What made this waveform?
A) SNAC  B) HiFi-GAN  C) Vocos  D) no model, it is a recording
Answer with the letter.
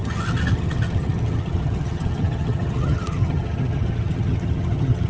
B